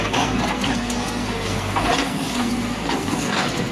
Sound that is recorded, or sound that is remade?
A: remade